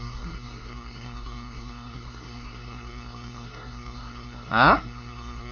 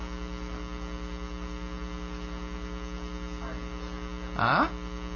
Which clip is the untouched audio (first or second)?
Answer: second